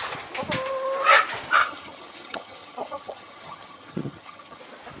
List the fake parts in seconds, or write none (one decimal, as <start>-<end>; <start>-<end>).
1.6-4.6

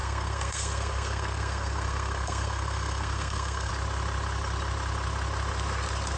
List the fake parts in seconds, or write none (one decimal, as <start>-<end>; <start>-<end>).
0.0-3.7

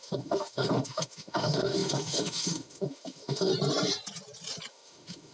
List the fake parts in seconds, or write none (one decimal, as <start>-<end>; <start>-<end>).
0.0-3.5; 4.7-5.3

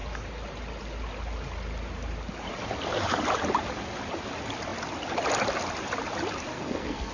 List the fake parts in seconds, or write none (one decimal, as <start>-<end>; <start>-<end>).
6.5-7.1

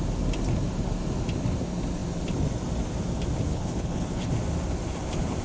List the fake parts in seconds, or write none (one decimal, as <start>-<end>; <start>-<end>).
3.5-4.3

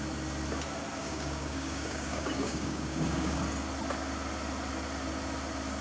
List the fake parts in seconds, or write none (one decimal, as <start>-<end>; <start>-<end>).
1.0-3.4

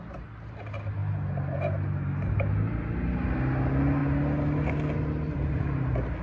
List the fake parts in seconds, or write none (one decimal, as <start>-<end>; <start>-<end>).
none

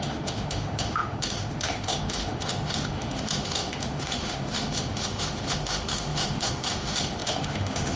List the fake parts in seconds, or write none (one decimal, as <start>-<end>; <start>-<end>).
0.0-8.0